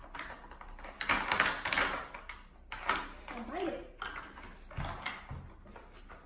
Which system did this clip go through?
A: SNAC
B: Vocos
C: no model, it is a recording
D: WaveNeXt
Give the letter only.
C